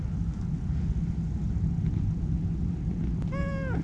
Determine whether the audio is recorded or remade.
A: recorded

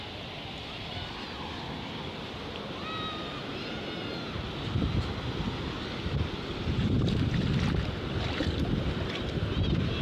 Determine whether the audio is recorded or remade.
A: recorded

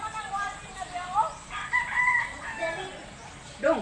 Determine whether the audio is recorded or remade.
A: remade